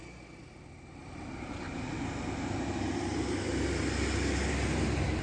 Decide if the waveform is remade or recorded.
recorded